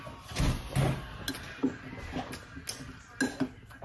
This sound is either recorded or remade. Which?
recorded